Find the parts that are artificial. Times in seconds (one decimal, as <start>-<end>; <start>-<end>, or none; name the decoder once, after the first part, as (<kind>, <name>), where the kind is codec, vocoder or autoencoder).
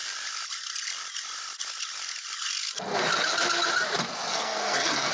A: 4.3-5.1 (codec, SNAC)